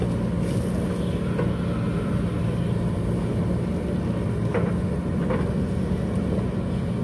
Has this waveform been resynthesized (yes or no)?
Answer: no